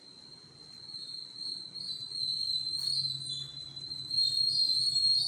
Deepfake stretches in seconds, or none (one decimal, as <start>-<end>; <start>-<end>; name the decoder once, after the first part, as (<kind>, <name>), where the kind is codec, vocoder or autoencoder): none